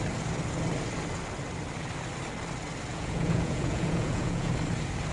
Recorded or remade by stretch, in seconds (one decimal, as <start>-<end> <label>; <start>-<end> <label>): 0.0-2.9 recorded; 2.9-4.5 remade; 4.5-5.1 recorded